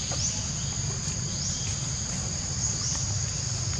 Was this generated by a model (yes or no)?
no